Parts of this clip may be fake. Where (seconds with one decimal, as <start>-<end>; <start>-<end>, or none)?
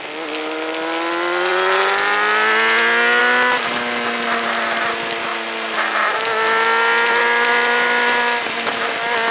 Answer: none